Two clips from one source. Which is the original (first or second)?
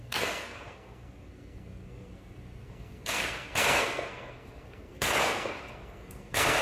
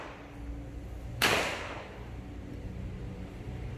second